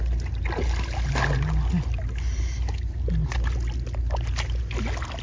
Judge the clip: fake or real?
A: real